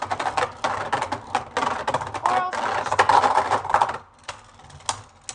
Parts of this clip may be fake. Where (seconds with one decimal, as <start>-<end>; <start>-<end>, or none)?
3.1-3.7